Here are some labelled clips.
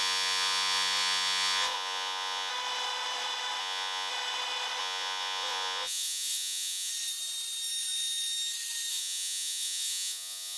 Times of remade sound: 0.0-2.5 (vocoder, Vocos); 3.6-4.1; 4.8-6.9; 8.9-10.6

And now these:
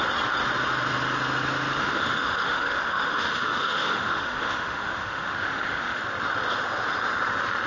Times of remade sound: 1.8-6.0 (autoencoder, DAC-VAE)

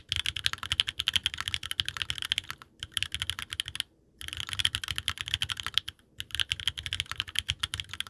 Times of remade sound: none